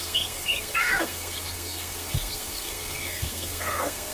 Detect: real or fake fake